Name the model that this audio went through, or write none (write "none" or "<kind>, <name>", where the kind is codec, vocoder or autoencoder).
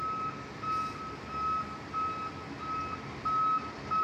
none